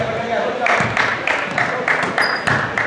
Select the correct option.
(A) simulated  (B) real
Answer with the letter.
B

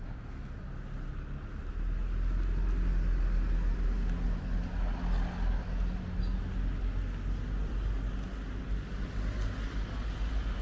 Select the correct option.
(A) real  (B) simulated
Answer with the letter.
A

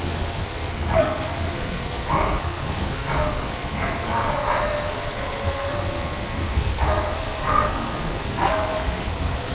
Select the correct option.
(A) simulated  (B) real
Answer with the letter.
A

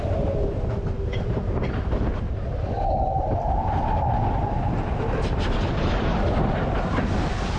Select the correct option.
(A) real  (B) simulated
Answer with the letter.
B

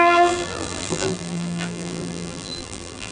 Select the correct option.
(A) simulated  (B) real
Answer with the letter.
A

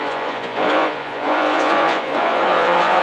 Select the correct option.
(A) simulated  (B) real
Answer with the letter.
A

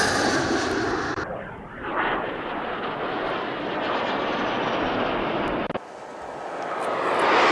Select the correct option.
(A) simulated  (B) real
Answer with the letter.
B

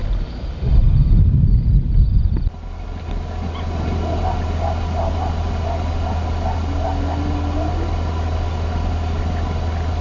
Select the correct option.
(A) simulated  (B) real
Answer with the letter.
B